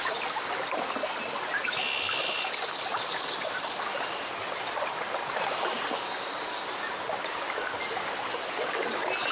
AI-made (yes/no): no